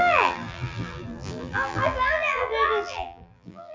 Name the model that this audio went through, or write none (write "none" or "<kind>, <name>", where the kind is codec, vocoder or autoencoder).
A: vocoder, BigVGAN v2